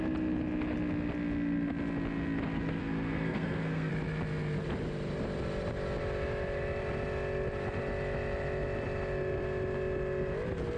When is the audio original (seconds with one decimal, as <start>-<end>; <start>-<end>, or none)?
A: 0.0-2.8; 3.9-10.8